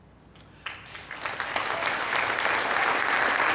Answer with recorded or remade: recorded